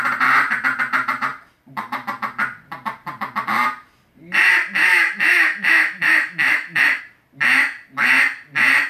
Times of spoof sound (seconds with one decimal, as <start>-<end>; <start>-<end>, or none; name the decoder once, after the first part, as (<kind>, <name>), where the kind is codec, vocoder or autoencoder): 4.8-7.0 (autoencoder, DAC-VAE)